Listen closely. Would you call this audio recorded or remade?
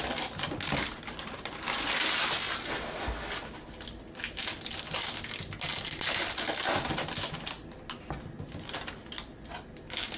recorded